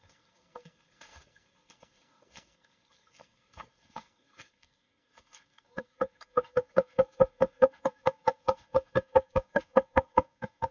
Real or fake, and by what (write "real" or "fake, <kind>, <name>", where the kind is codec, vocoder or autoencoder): fake, codec, SNAC